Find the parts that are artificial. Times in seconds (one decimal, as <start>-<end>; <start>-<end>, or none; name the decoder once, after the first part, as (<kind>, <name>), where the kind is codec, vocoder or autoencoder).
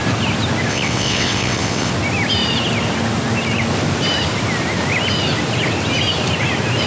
0.7-1.9 (vocoder, WaveNeXt)